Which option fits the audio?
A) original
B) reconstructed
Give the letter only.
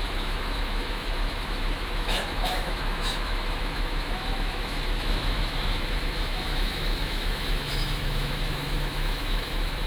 B